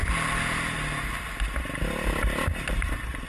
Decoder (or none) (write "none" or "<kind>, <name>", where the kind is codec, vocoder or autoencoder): none